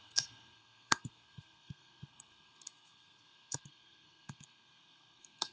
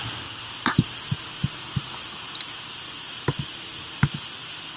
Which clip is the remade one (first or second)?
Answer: first